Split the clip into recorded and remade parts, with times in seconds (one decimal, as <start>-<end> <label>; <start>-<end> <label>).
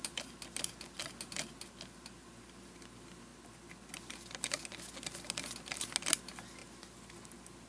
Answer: 0.0-7.7 recorded